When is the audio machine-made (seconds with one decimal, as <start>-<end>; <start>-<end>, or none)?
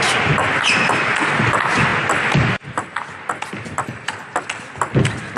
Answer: none